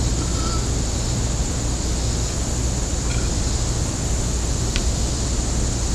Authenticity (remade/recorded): recorded